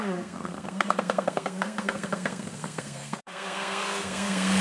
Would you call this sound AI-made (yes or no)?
yes